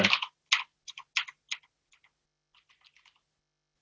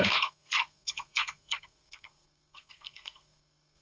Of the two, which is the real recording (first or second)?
first